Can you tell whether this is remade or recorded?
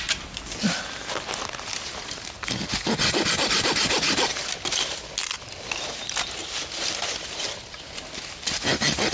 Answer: recorded